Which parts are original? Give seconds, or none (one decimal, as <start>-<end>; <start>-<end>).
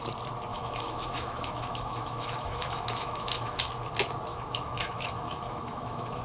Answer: 0.0-0.5; 3.6-4.3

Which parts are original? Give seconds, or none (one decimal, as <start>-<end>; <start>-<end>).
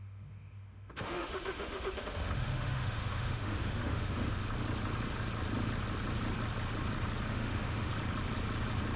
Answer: 4.4-7.3; 7.9-9.0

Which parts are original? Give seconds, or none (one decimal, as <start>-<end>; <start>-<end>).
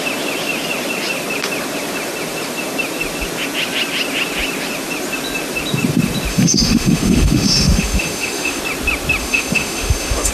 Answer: 0.0-6.3; 8.6-9.2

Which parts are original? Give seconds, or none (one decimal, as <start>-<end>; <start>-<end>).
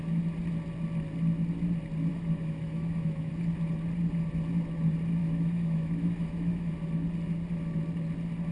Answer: 0.0-2.1; 3.3-5.2; 6.7-8.5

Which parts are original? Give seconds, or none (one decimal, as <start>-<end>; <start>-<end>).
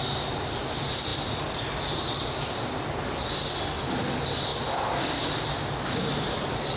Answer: 0.0-6.8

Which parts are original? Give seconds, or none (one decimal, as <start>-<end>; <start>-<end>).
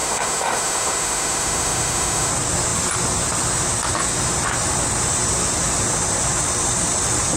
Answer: 2.3-7.4